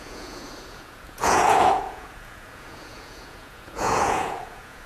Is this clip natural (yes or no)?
no